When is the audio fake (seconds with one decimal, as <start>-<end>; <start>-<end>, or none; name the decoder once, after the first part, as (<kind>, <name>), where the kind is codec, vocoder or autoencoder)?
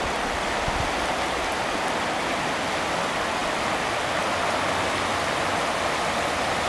none